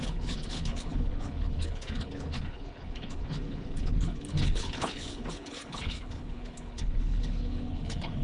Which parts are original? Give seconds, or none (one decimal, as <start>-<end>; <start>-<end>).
none

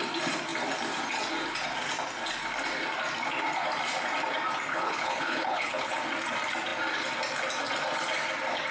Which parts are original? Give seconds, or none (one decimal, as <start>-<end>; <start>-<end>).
0.0-4.7; 6.0-8.7

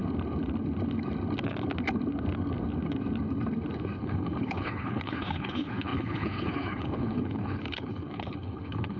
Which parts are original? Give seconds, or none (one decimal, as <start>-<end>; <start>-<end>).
0.0-4.0

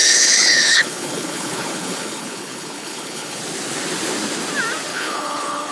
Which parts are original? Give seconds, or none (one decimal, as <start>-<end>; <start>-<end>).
3.4-4.9